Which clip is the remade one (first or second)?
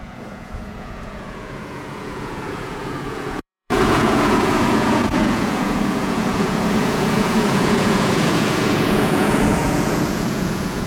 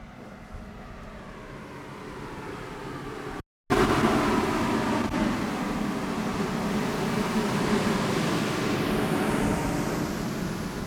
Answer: first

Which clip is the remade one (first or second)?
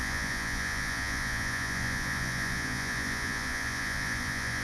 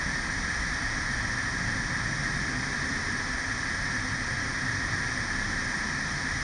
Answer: first